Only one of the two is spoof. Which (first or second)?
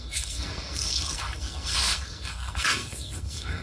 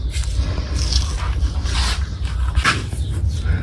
first